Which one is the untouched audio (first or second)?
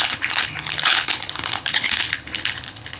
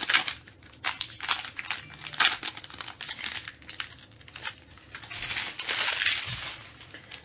second